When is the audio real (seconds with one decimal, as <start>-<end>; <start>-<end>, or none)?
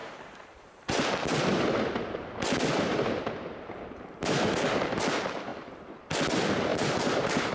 1.1-6.7